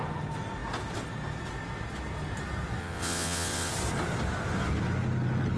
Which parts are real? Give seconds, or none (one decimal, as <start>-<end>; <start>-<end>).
0.0-2.8; 3.7-5.6